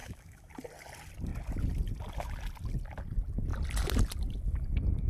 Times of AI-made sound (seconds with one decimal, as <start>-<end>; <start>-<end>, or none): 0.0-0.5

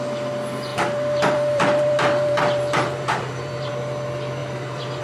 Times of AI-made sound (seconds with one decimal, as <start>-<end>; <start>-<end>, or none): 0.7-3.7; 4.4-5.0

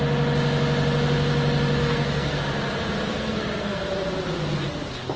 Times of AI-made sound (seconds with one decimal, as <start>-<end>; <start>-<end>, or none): 1.8-2.4; 3.1-3.8

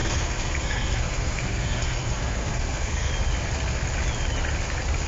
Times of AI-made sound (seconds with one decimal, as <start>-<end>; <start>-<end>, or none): 0.0-3.1

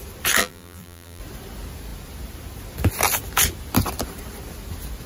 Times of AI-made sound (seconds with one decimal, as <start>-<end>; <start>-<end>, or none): 0.4-1.2